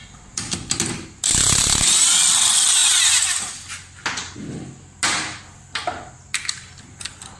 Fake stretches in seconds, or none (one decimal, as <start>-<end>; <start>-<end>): none